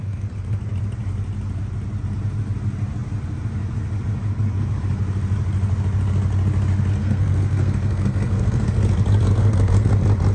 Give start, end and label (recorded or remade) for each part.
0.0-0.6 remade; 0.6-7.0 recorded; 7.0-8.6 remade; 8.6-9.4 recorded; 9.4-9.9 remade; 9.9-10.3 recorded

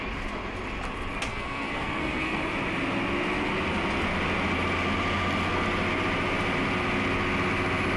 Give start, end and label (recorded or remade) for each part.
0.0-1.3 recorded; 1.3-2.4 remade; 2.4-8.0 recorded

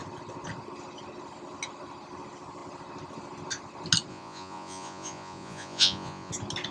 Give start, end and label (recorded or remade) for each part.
0.0-4.1 recorded; 4.1-6.3 remade; 6.3-6.7 recorded

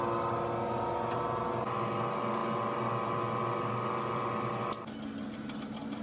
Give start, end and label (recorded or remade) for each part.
0.0-6.0 recorded

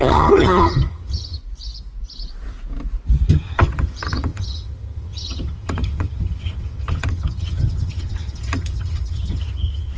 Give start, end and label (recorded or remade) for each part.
0.0-1.4 remade; 1.4-3.3 recorded; 3.3-10.0 remade

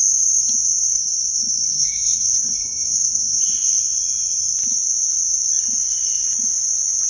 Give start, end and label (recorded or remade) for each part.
0.0-0.9 recorded; 0.9-3.8 remade; 3.8-7.1 recorded